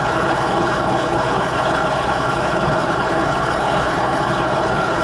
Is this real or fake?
fake